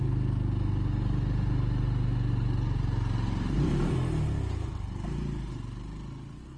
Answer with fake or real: real